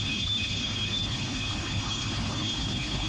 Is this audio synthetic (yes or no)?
yes